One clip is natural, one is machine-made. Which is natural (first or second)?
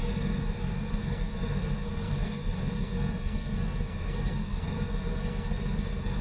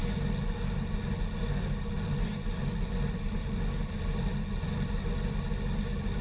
second